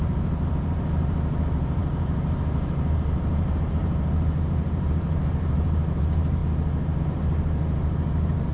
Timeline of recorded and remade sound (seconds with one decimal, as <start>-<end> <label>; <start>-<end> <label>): 0.0-6.4 remade; 6.4-7.0 recorded; 7.0-8.5 remade